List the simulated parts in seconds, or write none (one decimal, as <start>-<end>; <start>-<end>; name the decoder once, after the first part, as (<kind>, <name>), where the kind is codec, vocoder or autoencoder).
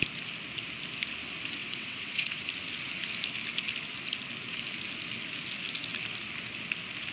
1.6-2.4 (vocoder, WaveNeXt)